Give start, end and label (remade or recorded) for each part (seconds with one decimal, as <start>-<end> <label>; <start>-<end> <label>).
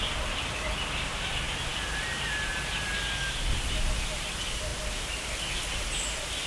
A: 0.0-6.5 recorded